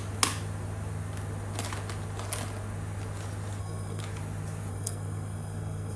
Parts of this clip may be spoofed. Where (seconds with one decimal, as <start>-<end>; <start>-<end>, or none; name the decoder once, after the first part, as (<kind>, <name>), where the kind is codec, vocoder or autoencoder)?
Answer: 3.6-4.0 (codec, SNAC); 4.7-6.0

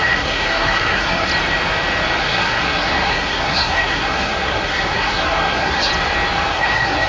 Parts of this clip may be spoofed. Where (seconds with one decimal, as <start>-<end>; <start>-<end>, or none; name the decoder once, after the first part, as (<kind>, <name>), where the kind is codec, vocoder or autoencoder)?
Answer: 0.0-1.3 (codec, SNAC); 2.2-5.9; 6.5-7.1

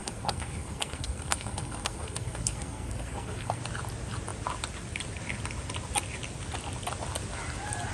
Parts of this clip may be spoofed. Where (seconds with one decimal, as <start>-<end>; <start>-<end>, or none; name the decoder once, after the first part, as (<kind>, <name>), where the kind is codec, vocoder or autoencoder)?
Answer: 0.0-3.6 (codec, SNAC)

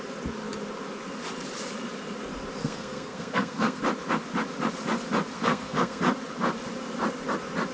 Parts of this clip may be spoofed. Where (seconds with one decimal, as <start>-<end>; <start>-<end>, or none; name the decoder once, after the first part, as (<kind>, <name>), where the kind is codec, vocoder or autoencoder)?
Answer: 2.6-3.8 (codec, SNAC); 5.3-6.0